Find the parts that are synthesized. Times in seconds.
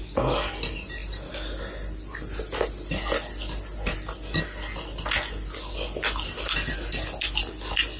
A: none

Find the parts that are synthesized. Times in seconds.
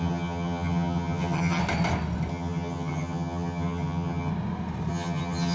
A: 0.0-1.6 (vocoder, HiFi-GAN); 2.3-4.3; 4.9-5.5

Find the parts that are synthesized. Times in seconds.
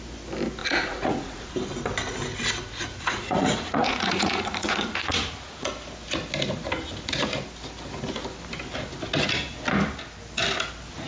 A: 0.6-1.5 (vocoder, Vocos); 2.9-5.7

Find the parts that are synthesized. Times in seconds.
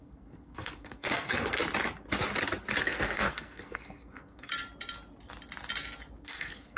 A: 0.0-1.6 (codec, SNAC); 2.8-4.5; 6.2-6.8